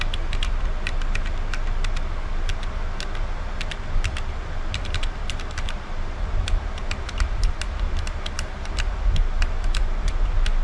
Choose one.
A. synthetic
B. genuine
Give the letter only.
B